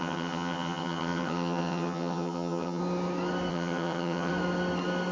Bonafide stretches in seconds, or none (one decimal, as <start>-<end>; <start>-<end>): 2.8-3.5; 4.3-5.1